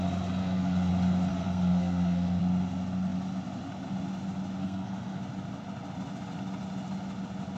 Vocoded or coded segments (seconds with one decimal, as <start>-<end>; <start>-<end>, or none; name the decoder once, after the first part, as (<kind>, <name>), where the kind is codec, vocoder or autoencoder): 0.4-0.9 (codec, SNAC); 1.3-2.4; 4.6-5.2